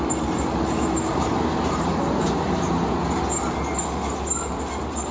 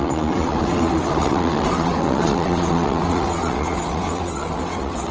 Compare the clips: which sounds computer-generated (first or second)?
second